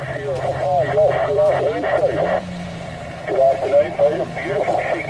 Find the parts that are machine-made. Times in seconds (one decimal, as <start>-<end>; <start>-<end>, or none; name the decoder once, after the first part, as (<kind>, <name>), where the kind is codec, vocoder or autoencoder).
1.2-4.0 (vocoder, BigVGAN v2)

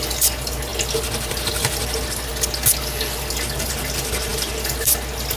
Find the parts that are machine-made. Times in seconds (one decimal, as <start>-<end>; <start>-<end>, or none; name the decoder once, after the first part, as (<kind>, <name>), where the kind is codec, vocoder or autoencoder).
none

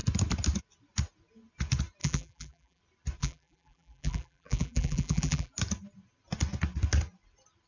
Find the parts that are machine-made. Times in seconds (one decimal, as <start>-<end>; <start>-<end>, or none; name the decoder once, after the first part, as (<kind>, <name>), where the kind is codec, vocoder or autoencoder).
2.0-2.8 (vocoder, BigVGAN v2); 3.2-5.5

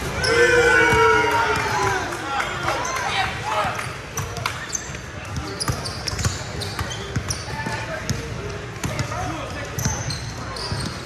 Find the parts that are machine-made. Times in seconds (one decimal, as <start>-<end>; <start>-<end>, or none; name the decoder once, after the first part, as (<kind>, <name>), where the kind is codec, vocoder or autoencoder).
none

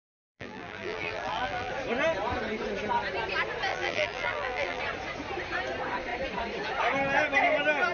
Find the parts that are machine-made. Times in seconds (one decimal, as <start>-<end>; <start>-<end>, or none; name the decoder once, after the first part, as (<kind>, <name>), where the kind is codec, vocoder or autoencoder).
0.0-1.7 (vocoder, BigVGAN v2); 3.7-4.8

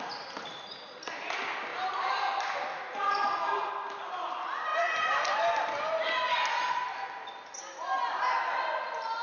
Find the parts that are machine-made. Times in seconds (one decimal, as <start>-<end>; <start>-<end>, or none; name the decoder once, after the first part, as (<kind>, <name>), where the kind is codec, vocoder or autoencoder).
1.7-3.7 (vocoder, BigVGAN v2)

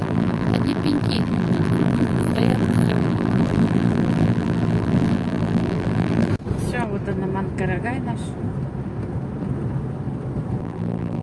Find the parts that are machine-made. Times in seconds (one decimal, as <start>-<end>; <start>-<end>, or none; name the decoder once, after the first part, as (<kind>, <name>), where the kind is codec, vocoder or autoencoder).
0.0-6.3 (vocoder, BigVGAN v2); 10.6-11.2